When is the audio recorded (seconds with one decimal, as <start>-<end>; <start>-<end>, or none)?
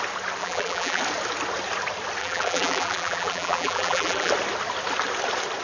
0.0-0.4; 1.0-2.2; 4.3-5.6